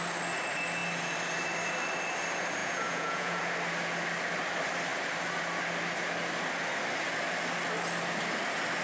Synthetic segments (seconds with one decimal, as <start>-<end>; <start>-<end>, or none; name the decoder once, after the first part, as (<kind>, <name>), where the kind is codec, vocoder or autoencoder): 2.6-3.4 (vocoder, Vocos)

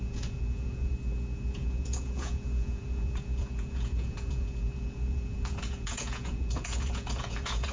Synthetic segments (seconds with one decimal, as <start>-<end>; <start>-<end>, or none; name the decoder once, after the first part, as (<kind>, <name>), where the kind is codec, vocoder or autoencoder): 0.0-0.9 (vocoder, Vocos); 1.5-7.7